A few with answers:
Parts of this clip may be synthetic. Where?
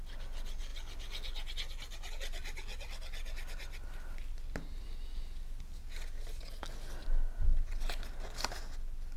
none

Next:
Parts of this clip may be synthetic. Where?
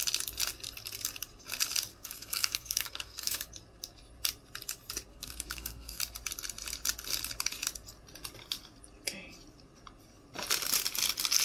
1.9-3.4 (codec, SNAC); 5.1-6.0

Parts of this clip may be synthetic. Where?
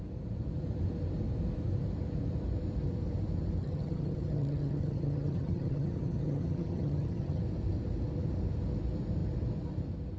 3.6-7.4 (vocoder, HiFi-GAN)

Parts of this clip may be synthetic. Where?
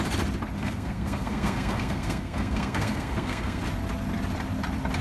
0.6-3.6 (codec, SNAC)